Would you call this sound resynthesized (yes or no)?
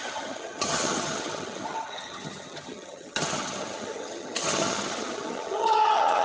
yes